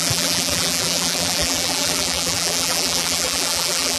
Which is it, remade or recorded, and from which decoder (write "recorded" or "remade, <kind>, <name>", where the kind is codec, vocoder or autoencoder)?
remade, vocoder, BigVGAN v2